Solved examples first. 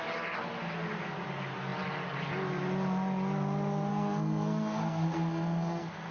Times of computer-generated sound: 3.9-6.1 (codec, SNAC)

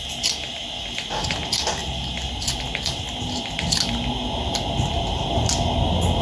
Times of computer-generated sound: none

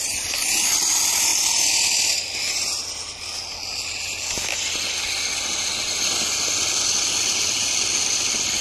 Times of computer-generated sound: none

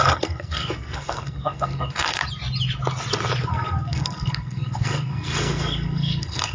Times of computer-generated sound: 0.0-2.2 (codec, SNAC); 3.5-6.5